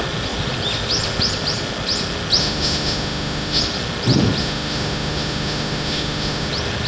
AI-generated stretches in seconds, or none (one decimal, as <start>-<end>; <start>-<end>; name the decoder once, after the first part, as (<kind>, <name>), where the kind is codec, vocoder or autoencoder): 2.4-3.6 (autoencoder, DAC-VAE); 4.4-6.5